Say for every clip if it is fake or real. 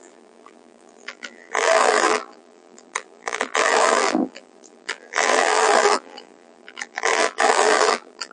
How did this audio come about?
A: fake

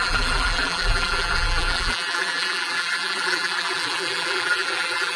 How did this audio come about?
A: fake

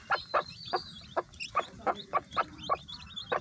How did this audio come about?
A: real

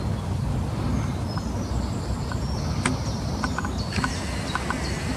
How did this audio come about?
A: real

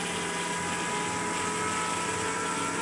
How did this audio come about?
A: real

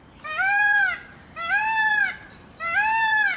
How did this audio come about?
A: fake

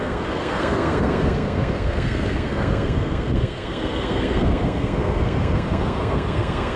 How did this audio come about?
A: fake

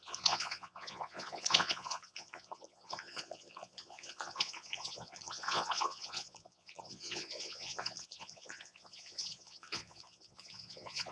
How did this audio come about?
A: fake